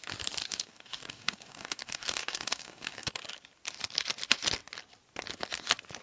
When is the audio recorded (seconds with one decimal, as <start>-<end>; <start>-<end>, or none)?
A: 0.0-0.4; 3.1-6.0